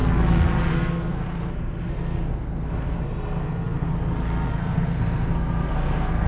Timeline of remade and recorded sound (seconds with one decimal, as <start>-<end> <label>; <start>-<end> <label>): 0.0-0.7 recorded; 0.7-3.9 remade; 3.9-4.5 recorded; 4.5-6.3 remade